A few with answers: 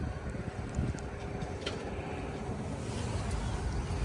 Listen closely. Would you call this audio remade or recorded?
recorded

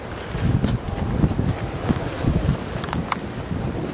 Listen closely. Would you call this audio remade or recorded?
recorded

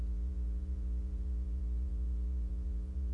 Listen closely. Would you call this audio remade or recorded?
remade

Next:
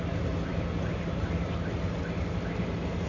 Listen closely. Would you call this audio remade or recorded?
recorded